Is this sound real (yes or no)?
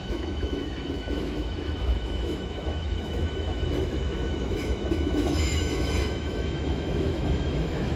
no